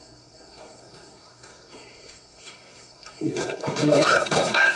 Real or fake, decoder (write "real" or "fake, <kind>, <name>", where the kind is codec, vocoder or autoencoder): fake, codec, SNAC